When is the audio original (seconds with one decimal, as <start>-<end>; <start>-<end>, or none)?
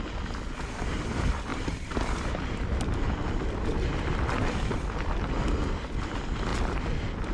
0.0-1.5; 5.9-6.5